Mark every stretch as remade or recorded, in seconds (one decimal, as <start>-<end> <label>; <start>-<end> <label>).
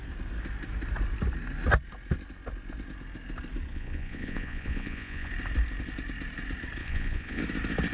0.0-3.7 recorded; 3.7-5.3 remade; 5.3-6.8 recorded; 6.8-7.4 remade; 7.4-7.9 recorded